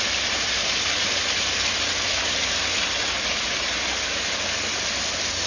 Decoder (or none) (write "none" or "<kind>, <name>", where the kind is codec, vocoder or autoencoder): none